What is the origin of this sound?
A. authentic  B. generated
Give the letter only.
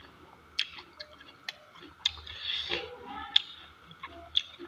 A